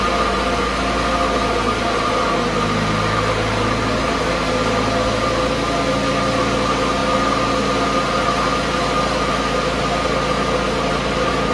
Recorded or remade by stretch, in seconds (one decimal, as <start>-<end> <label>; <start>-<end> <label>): 0.0-11.5 recorded